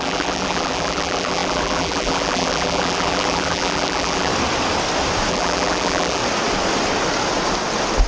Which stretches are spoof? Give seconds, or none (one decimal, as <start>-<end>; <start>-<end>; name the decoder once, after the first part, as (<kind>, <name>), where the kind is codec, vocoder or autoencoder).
0.0-4.3 (vocoder, BigVGAN v2); 5.3-6.2